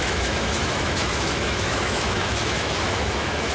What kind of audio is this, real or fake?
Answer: fake